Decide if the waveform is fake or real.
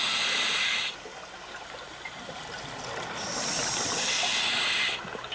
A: real